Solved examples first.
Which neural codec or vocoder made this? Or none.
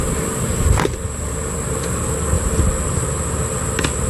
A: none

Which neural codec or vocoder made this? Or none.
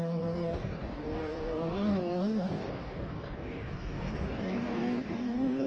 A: codec, DAC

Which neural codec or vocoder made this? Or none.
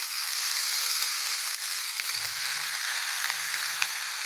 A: codec, SNAC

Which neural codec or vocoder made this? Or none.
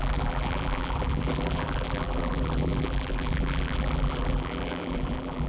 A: vocoder, BigVGAN v2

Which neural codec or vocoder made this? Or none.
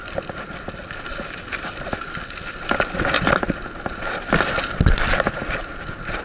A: none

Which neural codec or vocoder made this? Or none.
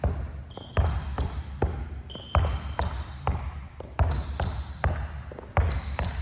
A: none